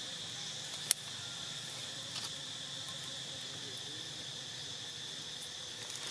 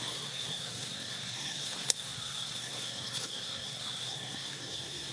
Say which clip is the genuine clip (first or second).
first